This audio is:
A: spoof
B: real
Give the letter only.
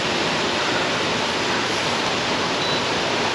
B